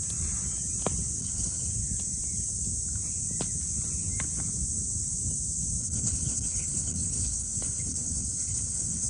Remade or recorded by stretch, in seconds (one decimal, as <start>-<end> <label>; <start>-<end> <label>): 0.0-1.2 recorded; 1.2-1.7 remade; 1.7-5.8 recorded; 5.8-9.1 remade